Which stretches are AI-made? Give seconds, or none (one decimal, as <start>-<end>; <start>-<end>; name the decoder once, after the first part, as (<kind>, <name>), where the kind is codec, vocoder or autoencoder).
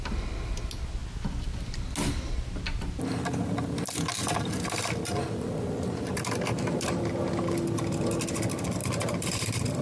8.8-9.8 (vocoder, BigVGAN v2)